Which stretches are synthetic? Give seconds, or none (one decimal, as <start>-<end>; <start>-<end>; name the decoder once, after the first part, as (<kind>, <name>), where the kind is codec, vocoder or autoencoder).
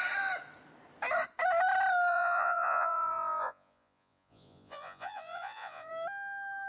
2.1-5.9 (vocoder, Vocos)